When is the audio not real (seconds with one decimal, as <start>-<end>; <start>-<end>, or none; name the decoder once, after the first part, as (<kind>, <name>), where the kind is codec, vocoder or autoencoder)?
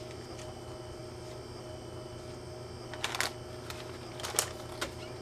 none